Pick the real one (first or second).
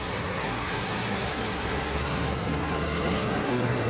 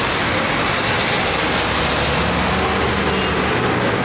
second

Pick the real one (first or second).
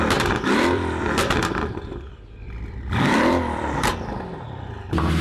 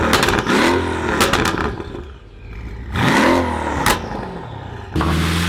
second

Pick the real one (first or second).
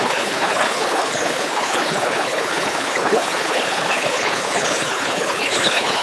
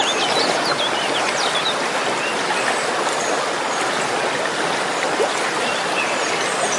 second